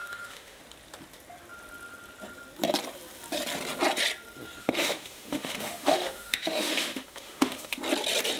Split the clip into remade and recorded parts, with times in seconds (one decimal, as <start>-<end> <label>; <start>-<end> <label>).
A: 0.0-0.6 remade; 0.6-4.6 recorded; 4.6-7.8 remade; 7.8-8.4 recorded